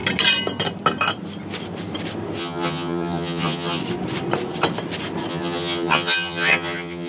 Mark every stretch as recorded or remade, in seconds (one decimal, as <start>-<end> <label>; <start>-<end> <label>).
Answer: 0.0-2.4 recorded; 2.4-3.8 remade; 3.8-5.3 recorded; 5.3-7.1 remade